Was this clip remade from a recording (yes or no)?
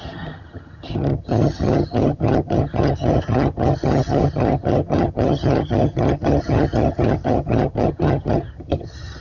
yes